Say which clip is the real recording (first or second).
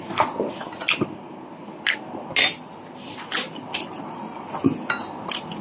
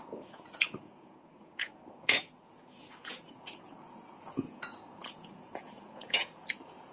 first